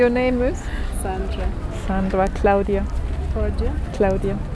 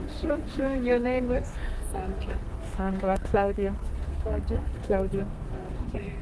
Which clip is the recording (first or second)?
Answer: first